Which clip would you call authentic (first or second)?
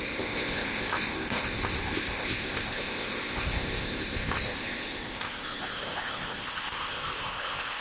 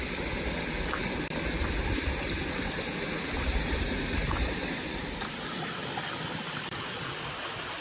second